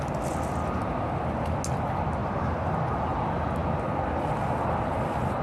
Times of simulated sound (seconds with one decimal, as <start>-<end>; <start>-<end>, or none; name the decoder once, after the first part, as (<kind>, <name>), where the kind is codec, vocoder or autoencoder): 2.2-3.1 (vocoder, BigVGAN v2)